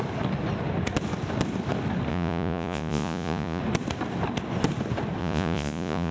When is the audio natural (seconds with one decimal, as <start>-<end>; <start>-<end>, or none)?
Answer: 0.0-2.1; 3.6-5.2